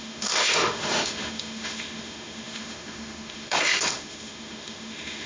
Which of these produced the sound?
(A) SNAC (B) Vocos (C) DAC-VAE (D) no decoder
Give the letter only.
C